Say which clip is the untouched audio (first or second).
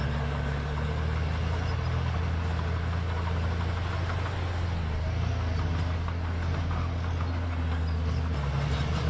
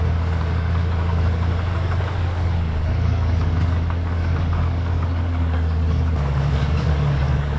first